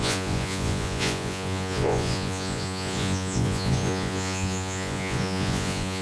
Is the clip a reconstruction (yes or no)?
yes